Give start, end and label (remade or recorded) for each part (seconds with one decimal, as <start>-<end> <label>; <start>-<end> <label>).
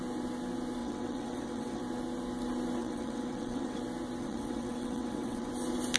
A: 0.0-0.8 recorded; 0.8-1.8 remade; 1.8-2.8 recorded; 2.8-3.8 remade; 3.8-4.2 recorded; 4.2-5.5 remade; 5.5-6.0 recorded